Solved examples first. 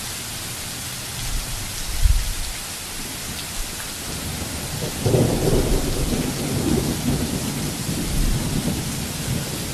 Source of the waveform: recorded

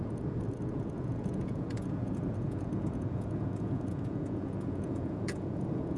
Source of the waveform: remade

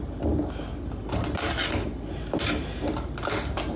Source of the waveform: recorded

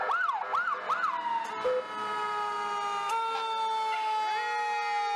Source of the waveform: recorded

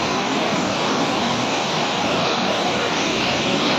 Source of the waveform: remade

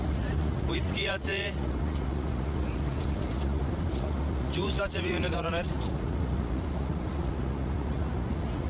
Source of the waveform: remade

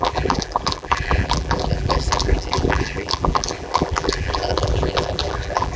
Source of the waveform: remade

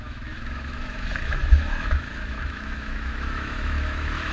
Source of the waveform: remade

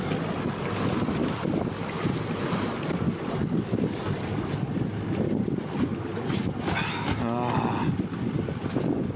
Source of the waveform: recorded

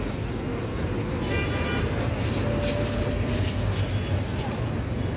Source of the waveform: recorded